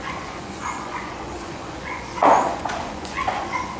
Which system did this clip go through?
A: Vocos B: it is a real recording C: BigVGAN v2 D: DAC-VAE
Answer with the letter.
A